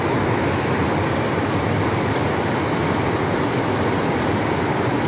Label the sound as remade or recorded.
recorded